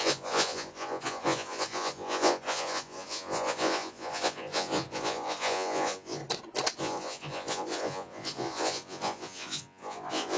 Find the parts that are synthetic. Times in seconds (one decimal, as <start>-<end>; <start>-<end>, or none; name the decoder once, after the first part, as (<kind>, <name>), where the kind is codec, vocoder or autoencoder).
0.0-6.2 (vocoder, Vocos); 6.8-10.4